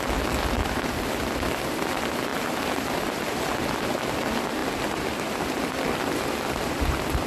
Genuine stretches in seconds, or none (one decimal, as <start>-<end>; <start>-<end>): 0.0-7.3